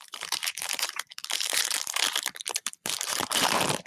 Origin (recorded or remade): remade